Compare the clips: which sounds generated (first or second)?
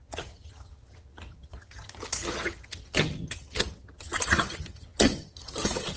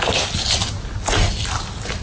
first